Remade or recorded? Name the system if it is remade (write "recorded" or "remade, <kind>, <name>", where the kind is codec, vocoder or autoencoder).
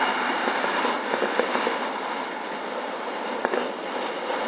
recorded